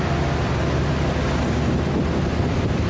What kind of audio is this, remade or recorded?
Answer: recorded